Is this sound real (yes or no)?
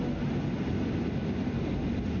yes